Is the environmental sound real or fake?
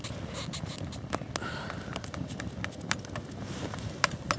real